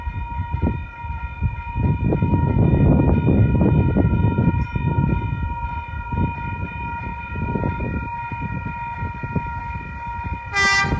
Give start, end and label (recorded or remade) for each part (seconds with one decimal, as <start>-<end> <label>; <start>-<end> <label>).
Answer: 0.0-0.4 recorded; 0.4-5.1 remade; 5.1-7.1 recorded; 7.1-7.8 remade; 7.8-11.0 recorded